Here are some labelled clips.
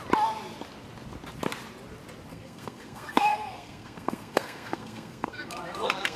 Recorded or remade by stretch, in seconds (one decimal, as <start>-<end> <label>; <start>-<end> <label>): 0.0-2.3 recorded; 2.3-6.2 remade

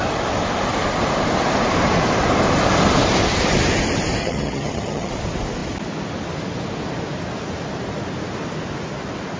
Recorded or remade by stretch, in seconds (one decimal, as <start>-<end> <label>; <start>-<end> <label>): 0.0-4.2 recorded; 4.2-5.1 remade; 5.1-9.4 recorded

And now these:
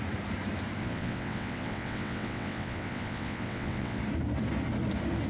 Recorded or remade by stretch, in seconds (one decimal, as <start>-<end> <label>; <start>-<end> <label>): 0.0-0.8 recorded; 0.8-4.0 remade; 4.0-5.3 recorded